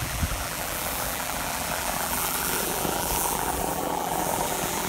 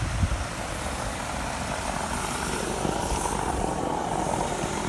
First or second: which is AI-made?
first